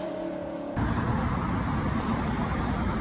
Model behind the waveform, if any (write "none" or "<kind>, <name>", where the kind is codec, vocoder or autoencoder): none